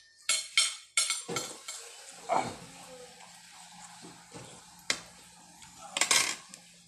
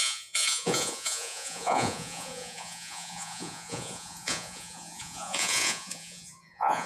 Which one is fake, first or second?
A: second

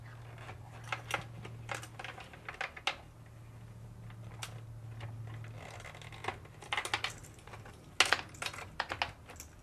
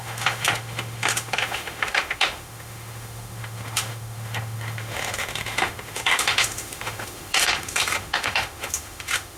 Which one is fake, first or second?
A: second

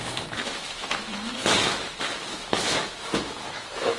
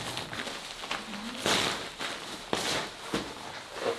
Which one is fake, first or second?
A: first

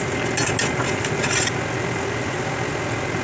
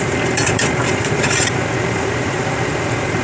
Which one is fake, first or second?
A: second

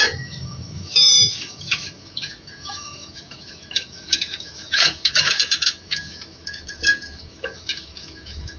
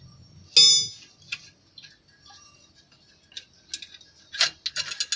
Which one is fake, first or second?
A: first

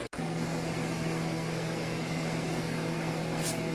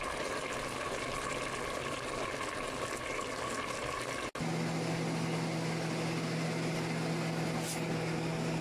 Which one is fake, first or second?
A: first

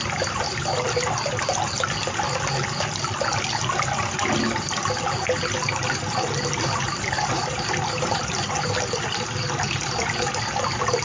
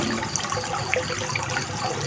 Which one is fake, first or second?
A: second